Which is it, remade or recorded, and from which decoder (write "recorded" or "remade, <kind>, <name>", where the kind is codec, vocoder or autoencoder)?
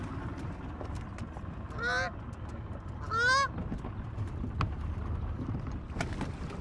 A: recorded